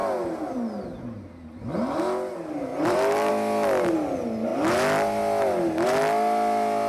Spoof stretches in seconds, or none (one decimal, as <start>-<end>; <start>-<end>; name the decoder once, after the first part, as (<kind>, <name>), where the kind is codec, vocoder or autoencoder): 2.7-3.3 (vocoder, BigVGAN v2)